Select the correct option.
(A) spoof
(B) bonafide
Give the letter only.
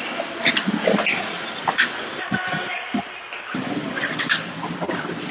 B